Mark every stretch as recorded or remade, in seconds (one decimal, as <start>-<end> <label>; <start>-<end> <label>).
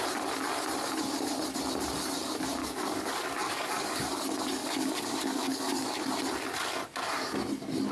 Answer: 0.0-2.6 recorded; 2.6-4.1 remade; 4.1-4.6 recorded; 4.6-6.0 remade; 6.0-7.9 recorded